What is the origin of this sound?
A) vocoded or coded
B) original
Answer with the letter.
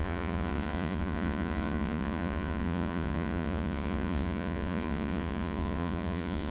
A